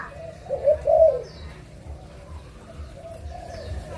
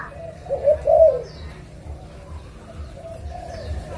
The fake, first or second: first